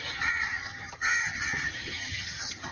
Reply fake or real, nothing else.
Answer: fake